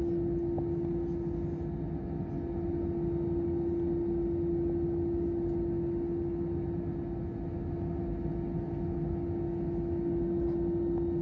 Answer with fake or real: real